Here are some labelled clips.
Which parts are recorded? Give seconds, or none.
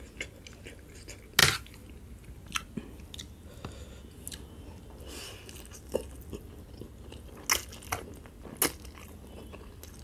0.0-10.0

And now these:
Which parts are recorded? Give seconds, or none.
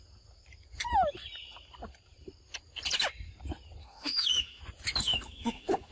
0.0-3.8; 4.6-5.0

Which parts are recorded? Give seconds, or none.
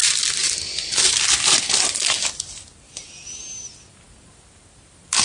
0.0-5.2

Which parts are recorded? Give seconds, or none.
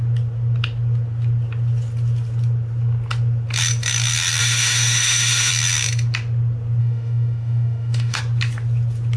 0.0-4.4; 5.5-6.8; 8.2-9.2